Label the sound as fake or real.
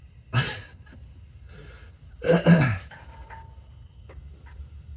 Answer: real